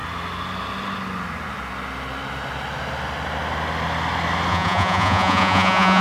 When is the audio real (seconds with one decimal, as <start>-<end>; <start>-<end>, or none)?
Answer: 0.0-4.5